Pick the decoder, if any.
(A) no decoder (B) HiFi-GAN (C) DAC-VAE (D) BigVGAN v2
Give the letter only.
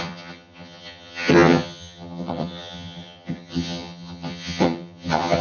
B